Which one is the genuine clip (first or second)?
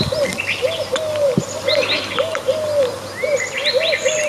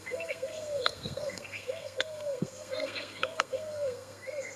first